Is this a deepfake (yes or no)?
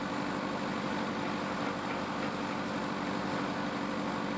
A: no